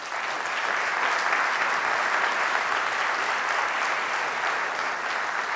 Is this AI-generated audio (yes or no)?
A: no